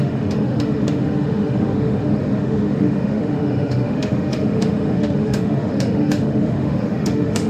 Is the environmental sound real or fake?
fake